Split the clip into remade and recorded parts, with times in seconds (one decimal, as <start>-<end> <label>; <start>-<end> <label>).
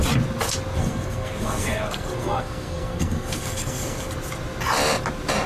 0.0-0.8 recorded; 0.8-4.1 remade; 4.1-5.5 recorded